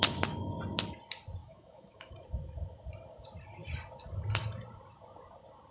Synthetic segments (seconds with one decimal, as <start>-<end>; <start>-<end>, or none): 1.4-2.1